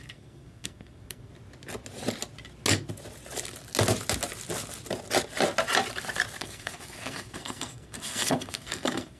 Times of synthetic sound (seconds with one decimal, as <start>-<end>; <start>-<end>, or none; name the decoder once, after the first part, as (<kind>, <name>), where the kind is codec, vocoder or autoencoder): 0.0-1.3 (codec, SNAC); 6.4-9.2